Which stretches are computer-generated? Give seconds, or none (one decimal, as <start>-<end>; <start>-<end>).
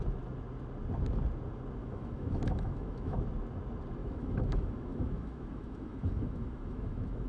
1.8-3.2; 4.0-7.3